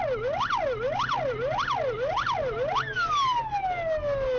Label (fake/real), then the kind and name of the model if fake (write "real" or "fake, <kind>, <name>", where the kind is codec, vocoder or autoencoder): real